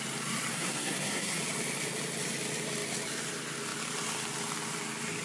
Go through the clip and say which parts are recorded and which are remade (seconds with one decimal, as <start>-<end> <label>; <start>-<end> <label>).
0.0-0.5 recorded; 0.5-1.4 remade; 1.4-5.2 recorded